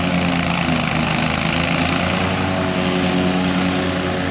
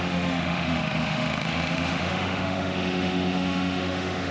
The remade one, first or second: second